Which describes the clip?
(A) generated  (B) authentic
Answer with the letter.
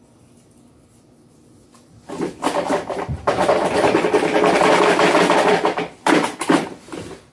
B